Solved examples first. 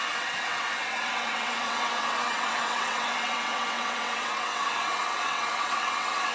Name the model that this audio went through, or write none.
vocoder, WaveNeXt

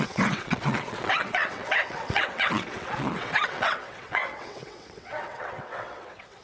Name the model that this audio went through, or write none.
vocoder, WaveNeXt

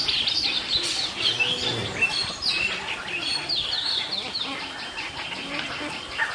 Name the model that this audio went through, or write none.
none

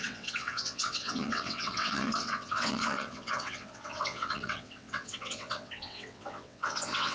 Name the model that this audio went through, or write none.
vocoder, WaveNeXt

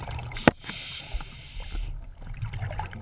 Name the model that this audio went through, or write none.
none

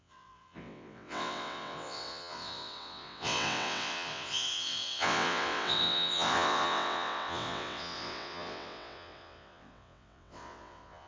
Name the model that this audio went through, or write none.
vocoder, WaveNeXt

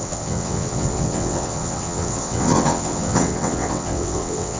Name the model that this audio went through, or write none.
vocoder, WaveNeXt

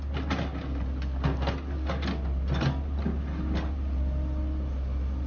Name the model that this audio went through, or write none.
none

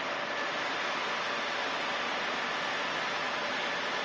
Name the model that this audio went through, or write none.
none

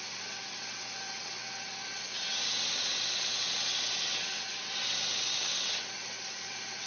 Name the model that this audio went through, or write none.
vocoder, WaveNeXt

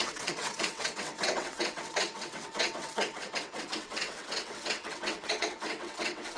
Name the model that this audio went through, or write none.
vocoder, WaveNeXt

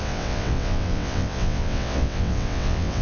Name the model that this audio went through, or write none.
vocoder, WaveNeXt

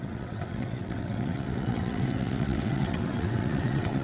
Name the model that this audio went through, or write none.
vocoder, WaveNeXt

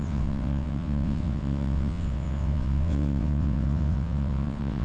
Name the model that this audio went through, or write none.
vocoder, WaveNeXt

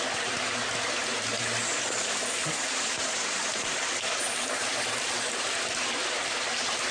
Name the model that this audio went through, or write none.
none